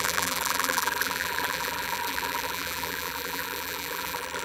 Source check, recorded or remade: remade